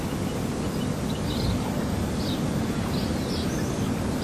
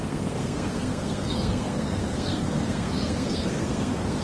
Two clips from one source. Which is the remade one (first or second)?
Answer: second